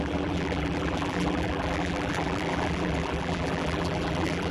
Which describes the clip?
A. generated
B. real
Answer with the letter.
A